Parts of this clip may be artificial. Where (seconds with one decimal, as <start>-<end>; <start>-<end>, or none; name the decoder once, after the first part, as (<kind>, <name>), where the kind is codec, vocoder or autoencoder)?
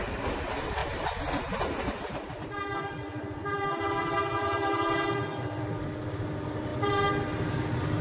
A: 0.8-5.6 (vocoder, BigVGAN v2)